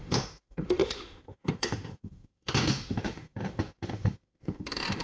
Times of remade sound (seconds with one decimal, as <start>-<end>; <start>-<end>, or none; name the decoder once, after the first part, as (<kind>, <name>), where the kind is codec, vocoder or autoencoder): 0.0-5.0 (autoencoder, DAC-VAE)

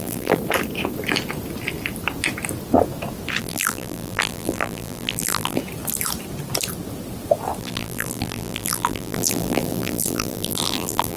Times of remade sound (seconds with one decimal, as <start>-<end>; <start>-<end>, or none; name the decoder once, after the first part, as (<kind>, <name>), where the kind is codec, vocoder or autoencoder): 0.0-0.4 (vocoder, BigVGAN v2); 3.4-5.6; 7.6-11.2